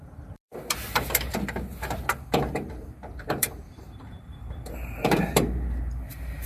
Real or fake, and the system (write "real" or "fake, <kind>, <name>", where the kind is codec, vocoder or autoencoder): fake, vocoder, BigVGAN v2